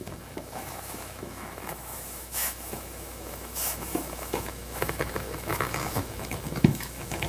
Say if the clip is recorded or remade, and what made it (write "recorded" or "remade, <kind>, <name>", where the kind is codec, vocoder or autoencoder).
remade, autoencoder, DAC-VAE